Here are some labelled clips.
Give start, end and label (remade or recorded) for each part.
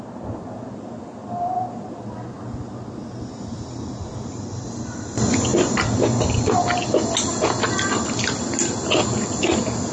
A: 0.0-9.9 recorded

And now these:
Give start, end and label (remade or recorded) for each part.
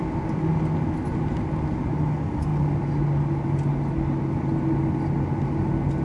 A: 0.0-6.0 recorded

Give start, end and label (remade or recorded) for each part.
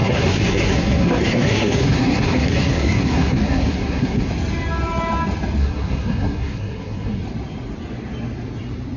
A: 0.0-4.3 remade; 4.3-5.6 recorded; 5.6-7.2 remade; 7.2-9.0 recorded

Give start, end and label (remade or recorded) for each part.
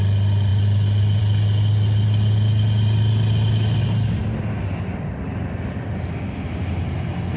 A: 0.0-7.4 recorded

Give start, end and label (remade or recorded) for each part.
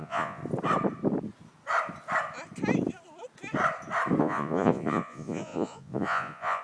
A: 0.0-0.4 remade; 0.4-4.2 recorded; 4.2-6.6 remade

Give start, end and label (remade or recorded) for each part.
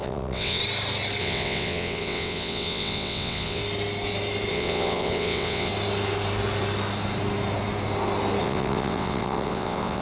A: 0.0-0.6 remade; 0.6-1.2 recorded; 1.2-3.6 remade; 3.6-4.5 recorded; 4.5-5.7 remade; 5.7-8.4 recorded; 8.4-10.0 remade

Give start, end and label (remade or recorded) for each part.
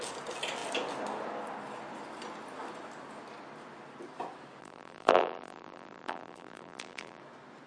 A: 0.0-4.6 recorded; 4.6-7.2 remade; 7.2-7.7 recorded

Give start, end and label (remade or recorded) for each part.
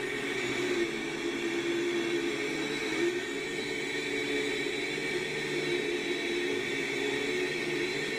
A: 0.0-8.2 recorded